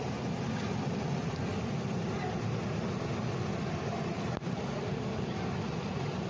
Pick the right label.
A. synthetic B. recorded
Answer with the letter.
B